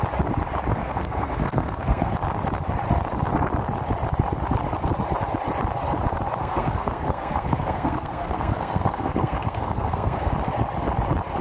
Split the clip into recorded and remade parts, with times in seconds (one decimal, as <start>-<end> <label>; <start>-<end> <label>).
0.0-0.7 recorded; 0.7-2.1 remade; 2.1-6.4 recorded; 6.4-10.3 remade; 10.3-11.4 recorded